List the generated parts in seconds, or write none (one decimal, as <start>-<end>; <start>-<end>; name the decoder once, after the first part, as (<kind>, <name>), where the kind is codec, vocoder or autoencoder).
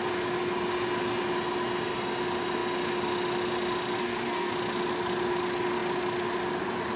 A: 4.0-4.5 (codec, SNAC)